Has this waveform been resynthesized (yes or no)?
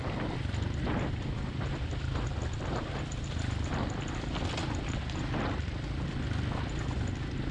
no